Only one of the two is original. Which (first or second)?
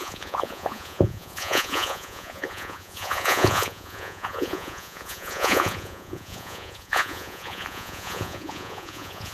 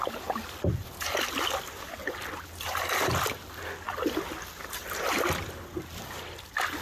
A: second